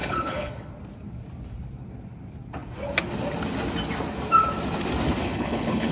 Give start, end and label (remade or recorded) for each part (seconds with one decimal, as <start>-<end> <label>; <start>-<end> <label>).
0.0-0.7 remade; 0.7-5.2 recorded; 5.2-5.9 remade